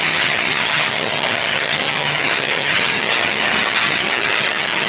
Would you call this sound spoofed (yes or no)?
yes